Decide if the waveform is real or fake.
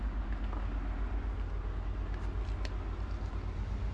real